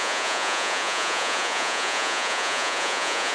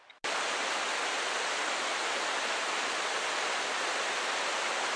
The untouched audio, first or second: second